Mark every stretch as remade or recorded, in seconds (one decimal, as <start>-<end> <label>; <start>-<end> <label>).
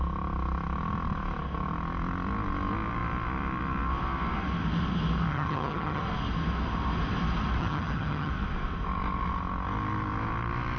0.0-5.3 recorded; 5.3-6.0 remade; 6.0-7.6 recorded; 7.6-8.3 remade; 8.3-10.8 recorded